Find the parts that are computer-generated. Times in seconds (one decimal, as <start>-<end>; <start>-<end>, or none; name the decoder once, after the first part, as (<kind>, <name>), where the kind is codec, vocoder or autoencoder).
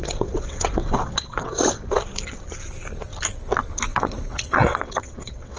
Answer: 0.0-2.0 (vocoder, WaveNeXt); 3.9-5.6